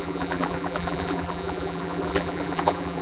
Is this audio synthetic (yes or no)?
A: yes